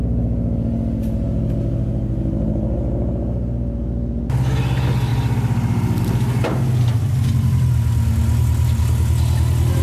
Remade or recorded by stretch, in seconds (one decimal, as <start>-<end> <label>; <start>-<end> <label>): 0.0-9.8 recorded